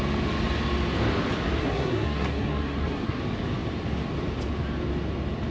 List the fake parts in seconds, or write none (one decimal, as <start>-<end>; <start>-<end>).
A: 1.6-3.2